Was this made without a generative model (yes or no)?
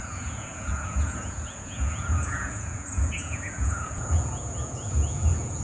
no